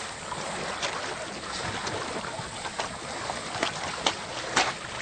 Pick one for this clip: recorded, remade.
recorded